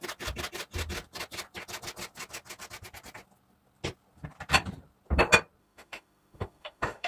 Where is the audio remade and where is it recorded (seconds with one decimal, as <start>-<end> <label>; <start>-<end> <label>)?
0.0-5.6 recorded; 5.6-7.1 remade